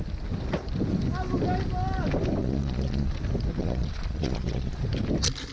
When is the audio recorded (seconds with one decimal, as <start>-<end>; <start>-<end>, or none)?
0.0-2.4; 3.1-3.6; 4.8-5.5